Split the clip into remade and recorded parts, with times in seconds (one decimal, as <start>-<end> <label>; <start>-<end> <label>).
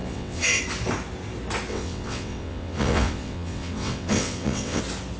0.0-0.6 remade; 0.6-1.7 recorded; 1.7-4.8 remade; 4.8-5.2 recorded